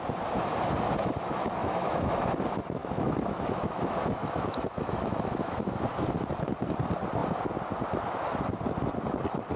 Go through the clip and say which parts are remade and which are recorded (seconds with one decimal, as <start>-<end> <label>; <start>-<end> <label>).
0.0-1.6 recorded; 1.6-2.2 remade; 2.2-2.8 recorded; 2.8-5.8 remade; 5.8-9.6 recorded